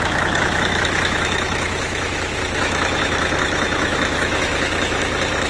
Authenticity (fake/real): fake